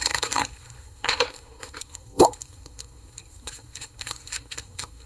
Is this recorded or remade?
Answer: remade